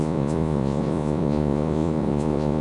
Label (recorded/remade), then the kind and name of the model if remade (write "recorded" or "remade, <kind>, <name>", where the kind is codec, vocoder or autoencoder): remade, vocoder, Vocos